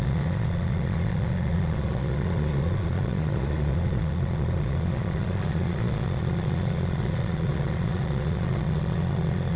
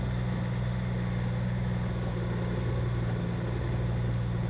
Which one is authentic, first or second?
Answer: second